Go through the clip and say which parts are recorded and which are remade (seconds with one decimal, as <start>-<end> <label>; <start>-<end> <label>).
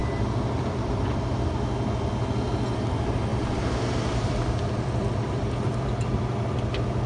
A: 0.0-1.3 remade; 1.3-3.3 recorded; 3.3-7.1 remade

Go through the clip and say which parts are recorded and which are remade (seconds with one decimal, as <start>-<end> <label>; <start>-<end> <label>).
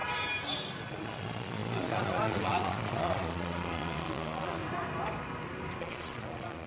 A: 0.0-0.9 recorded; 0.9-4.6 remade; 4.6-5.8 recorded; 5.8-6.7 remade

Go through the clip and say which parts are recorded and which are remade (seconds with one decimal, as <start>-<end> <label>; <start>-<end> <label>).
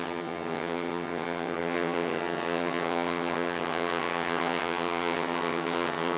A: 0.0-6.2 remade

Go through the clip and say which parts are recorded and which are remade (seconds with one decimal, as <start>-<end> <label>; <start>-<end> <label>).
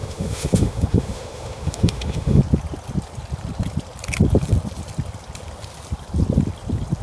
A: 0.0-2.4 remade; 2.4-7.0 recorded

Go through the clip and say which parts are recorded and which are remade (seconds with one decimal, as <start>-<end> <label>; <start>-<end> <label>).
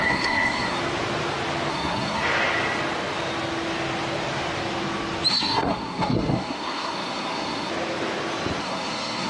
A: 0.0-0.8 remade; 0.8-1.7 recorded; 1.7-2.2 remade; 2.2-5.3 recorded; 5.3-7.7 remade; 7.7-8.6 recorded; 8.6-9.3 remade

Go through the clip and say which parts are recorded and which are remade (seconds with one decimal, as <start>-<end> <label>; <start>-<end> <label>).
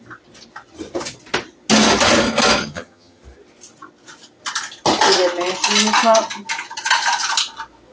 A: 0.0-2.6 recorded; 2.6-3.2 remade; 3.2-7.9 recorded